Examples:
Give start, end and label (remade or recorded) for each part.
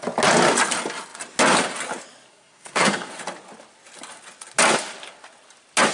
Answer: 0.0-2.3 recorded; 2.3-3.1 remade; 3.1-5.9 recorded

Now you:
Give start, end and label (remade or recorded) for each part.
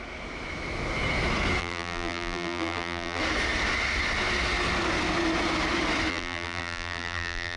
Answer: 0.0-1.6 recorded; 1.6-3.2 remade; 3.2-6.1 recorded; 6.1-7.6 remade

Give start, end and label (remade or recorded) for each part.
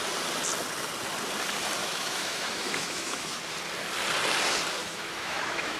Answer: 0.0-1.8 recorded; 1.8-3.4 remade; 3.4-4.8 recorded; 4.8-5.8 remade